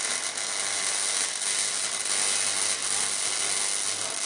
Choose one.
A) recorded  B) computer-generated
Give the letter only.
A